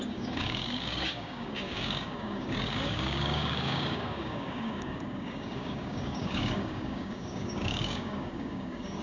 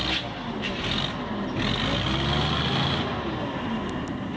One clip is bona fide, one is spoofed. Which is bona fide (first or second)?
second